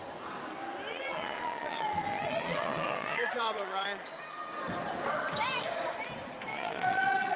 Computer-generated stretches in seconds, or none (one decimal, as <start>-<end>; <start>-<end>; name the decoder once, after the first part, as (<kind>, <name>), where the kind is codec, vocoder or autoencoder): 0.9-4.1 (vocoder, Vocos); 6.5-7.4